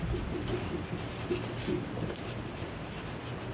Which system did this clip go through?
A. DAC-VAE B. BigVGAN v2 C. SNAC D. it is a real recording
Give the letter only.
D